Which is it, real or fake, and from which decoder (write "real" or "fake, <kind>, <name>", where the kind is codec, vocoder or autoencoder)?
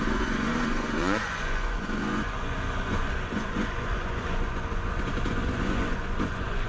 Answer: fake, vocoder, Vocos